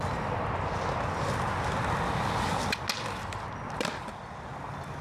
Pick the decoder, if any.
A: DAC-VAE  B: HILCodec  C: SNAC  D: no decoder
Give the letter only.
D